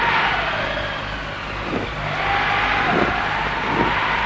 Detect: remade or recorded recorded